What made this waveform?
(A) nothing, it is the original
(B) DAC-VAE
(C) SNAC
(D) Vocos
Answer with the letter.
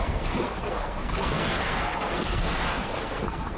C